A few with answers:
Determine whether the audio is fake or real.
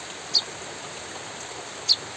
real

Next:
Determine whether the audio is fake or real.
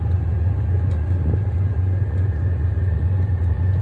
fake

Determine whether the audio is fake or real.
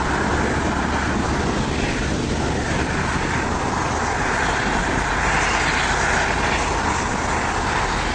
real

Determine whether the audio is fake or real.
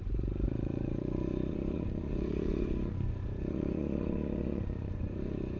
fake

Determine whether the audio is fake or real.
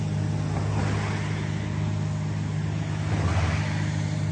real